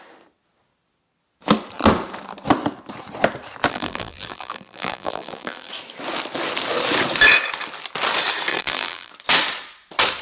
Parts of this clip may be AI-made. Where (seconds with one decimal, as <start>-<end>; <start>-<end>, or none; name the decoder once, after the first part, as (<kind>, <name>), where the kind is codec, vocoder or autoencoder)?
3.7-5.7 (vocoder, BigVGAN v2); 8.5-9.1